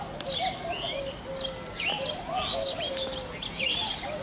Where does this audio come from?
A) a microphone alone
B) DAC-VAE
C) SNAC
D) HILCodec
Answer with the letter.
A